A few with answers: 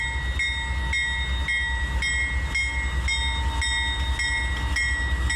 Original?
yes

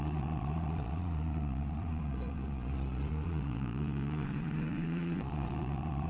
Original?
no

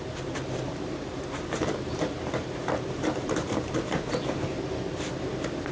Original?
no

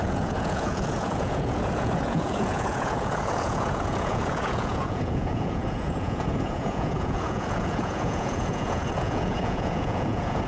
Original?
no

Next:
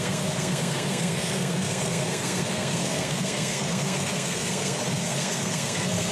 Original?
no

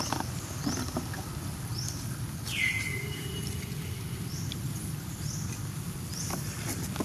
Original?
no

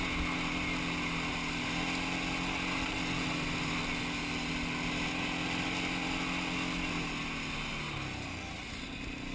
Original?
yes